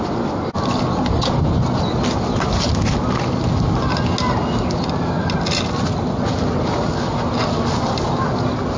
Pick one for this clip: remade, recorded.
recorded